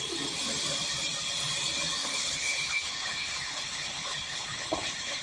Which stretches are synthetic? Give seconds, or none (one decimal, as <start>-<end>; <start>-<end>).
2.0-5.2

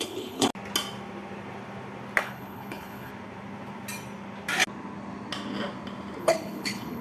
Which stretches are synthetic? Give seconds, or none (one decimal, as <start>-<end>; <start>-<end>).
0.0-0.5; 2.2-3.1; 6.2-7.0